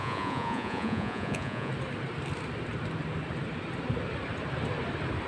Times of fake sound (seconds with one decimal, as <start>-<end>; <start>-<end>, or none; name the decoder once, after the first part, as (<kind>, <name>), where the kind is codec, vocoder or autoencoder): 0.0-1.7 (vocoder, Vocos)